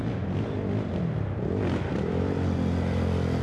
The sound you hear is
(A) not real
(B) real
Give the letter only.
B